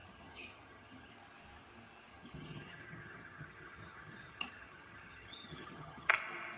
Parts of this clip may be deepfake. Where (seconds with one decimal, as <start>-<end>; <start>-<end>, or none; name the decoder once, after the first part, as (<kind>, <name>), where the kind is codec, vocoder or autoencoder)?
0.0-1.1 (vocoder, HiFi-GAN); 2.1-6.1

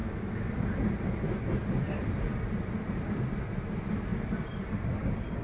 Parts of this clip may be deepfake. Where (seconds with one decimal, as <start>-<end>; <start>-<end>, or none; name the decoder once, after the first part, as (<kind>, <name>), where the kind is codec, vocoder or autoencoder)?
none

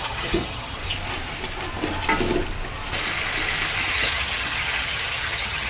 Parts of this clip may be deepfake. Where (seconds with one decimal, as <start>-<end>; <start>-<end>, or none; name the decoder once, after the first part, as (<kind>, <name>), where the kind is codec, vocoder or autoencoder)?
0.0-0.8 (vocoder, HiFi-GAN); 3.8-5.7

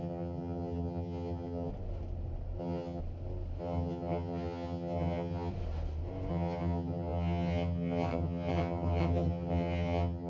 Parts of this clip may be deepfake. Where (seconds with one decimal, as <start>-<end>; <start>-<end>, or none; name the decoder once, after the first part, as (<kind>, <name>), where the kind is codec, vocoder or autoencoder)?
0.0-1.7 (vocoder, HiFi-GAN); 2.6-3.0; 3.6-5.5; 6.3-10.3

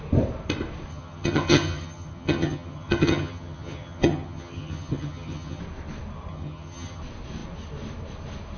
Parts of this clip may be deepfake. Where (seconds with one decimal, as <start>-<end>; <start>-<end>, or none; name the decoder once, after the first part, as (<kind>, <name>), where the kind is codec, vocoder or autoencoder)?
0.9-5.6 (vocoder, HiFi-GAN); 6.3-7.0

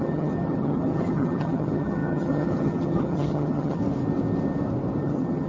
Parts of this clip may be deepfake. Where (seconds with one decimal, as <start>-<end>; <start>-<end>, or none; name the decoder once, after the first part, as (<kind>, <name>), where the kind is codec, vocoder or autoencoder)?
0.0-3.8 (vocoder, HiFi-GAN); 5.0-5.5

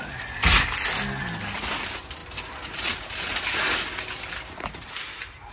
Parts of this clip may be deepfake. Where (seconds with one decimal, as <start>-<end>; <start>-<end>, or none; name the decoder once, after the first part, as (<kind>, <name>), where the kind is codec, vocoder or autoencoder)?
none